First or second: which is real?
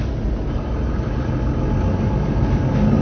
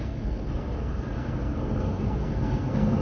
first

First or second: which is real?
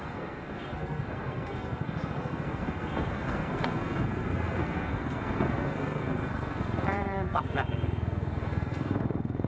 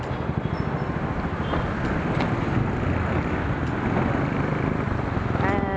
second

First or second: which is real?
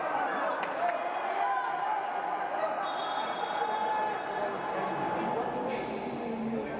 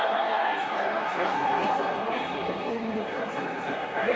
first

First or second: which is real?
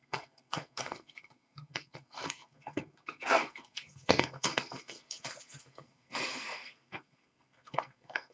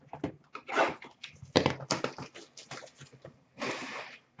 second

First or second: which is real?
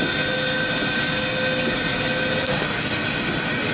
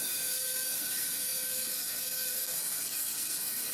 first